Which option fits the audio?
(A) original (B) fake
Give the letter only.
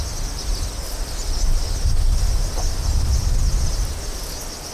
A